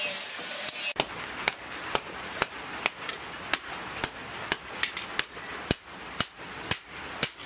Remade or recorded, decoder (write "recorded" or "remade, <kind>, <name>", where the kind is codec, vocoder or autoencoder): recorded